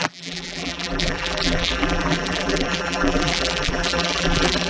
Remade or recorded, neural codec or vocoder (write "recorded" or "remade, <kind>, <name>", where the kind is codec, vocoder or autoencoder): remade, vocoder, BigVGAN v2